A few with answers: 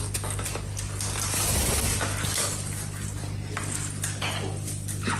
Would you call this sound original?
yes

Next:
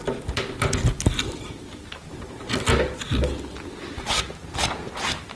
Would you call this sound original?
yes